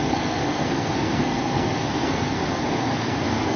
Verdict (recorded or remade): remade